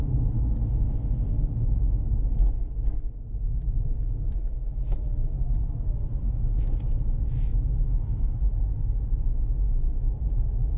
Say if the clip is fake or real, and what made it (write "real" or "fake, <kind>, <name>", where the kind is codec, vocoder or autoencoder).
real